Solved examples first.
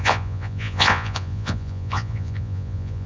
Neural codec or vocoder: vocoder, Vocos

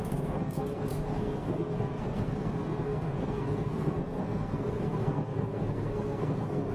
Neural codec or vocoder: codec, SNAC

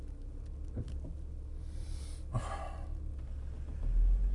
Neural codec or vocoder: none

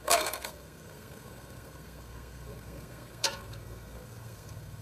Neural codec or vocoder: codec, SNAC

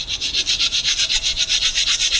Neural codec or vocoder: vocoder, BigVGAN v2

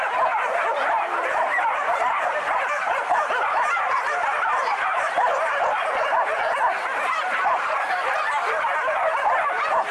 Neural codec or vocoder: vocoder, BigVGAN v2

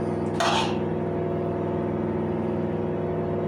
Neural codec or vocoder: none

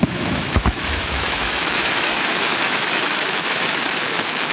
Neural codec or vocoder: autoencoder, DAC-VAE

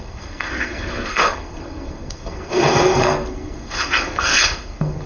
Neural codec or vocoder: codec, SNAC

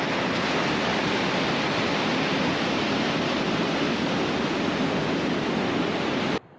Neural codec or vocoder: none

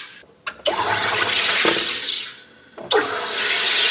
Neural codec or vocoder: none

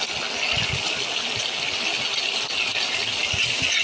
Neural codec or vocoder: none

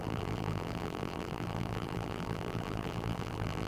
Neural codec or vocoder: vocoder, BigVGAN v2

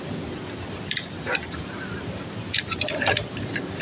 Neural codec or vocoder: none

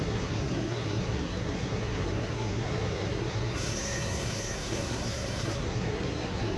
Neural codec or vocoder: codec, SNAC